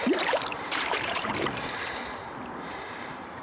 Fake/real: fake